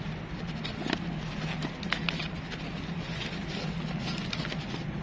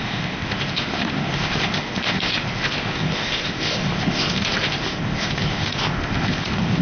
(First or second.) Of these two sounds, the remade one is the second